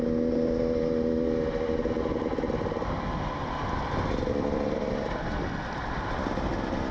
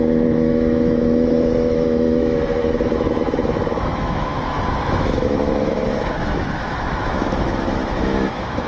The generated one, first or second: second